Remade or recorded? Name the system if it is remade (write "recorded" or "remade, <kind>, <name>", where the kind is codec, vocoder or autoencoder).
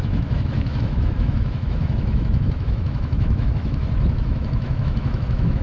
remade, autoencoder, DAC-VAE